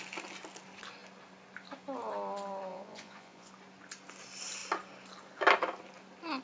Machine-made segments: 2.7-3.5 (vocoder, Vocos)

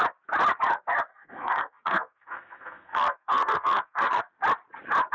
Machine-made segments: 1.1-4.2 (codec, SNAC)

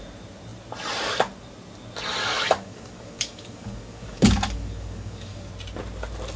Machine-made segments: 2.2-5.5 (codec, DAC)

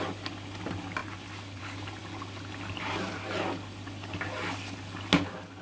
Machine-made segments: none